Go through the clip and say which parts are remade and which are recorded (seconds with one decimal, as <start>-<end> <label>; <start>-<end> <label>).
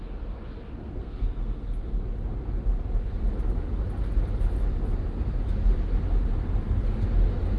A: 0.0-0.8 recorded; 0.8-2.0 remade; 2.0-7.6 recorded